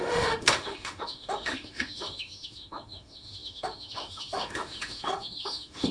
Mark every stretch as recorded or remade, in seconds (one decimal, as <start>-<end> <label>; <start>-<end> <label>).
0.0-5.9 remade